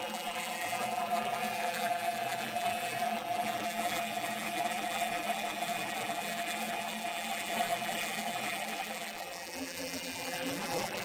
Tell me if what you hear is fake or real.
fake